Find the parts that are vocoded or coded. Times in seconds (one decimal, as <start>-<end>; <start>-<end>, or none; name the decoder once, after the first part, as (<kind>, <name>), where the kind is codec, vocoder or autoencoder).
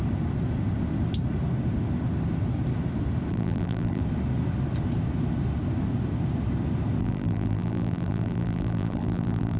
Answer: 3.3-4.0 (vocoder, BigVGAN v2); 7.0-9.6